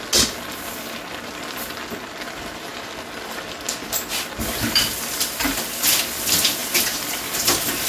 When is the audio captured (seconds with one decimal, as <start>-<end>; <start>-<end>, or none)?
0.0-2.7; 4.0-4.8; 5.7-6.6; 7.2-7.9